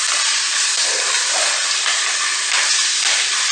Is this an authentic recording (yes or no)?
yes